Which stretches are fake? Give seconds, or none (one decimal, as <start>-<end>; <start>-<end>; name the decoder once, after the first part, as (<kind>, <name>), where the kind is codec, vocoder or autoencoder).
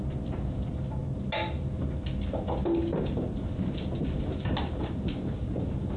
none